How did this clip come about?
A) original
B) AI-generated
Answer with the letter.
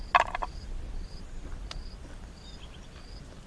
A